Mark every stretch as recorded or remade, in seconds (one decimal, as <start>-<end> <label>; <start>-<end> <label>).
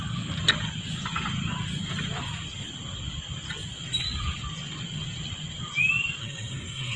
0.0-6.2 recorded; 6.2-7.0 remade